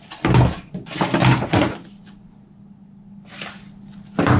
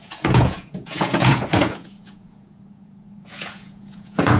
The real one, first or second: first